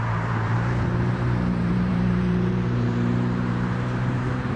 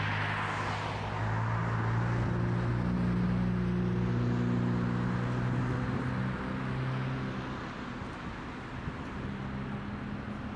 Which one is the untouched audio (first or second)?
second